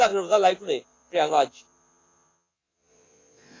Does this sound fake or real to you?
fake